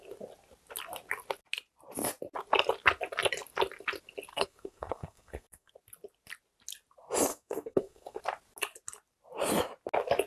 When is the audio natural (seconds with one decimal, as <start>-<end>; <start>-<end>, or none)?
0.0-4.3; 5.7-7.3; 8.2-10.3